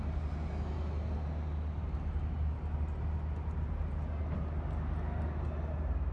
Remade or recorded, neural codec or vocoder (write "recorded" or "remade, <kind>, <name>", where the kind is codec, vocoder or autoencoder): recorded